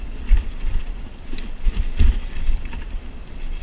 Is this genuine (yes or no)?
yes